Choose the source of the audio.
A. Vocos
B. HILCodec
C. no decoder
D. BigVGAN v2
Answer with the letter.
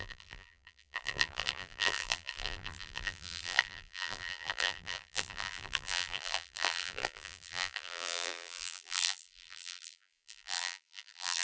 D